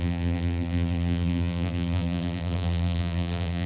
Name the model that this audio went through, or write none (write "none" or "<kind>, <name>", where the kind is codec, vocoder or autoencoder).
vocoder, BigVGAN v2